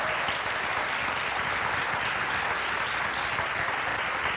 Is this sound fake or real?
real